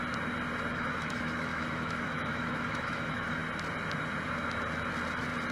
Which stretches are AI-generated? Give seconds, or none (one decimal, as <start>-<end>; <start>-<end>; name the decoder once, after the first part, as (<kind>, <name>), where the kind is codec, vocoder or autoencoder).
0.7-3.4 (autoencoder, DAC-VAE)